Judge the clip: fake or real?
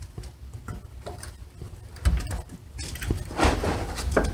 real